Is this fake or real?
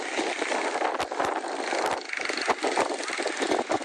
real